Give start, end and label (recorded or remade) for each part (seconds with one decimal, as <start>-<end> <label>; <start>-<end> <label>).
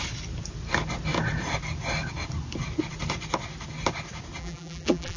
0.0-4.4 recorded; 4.4-5.2 remade